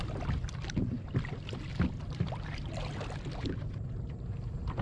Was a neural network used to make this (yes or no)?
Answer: no